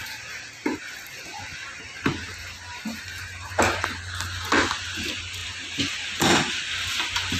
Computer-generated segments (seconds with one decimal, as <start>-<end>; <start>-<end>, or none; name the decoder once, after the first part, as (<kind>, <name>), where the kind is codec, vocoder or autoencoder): none